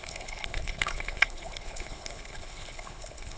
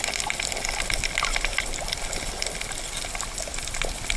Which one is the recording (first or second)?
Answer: second